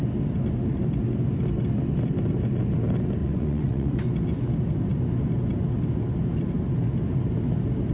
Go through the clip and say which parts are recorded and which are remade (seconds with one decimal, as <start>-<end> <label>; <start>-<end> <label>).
0.0-3.2 recorded; 3.2-4.0 remade; 4.0-7.9 recorded